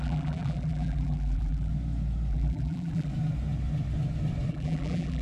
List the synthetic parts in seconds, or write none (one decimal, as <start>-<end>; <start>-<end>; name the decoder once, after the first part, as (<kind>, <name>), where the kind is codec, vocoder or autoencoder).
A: 0.0-1.7 (vocoder, BigVGAN v2); 2.3-3.1; 4.5-5.2